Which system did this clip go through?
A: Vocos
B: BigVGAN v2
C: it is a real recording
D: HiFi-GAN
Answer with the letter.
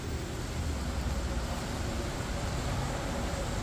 C